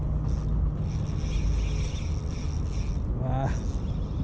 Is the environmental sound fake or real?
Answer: real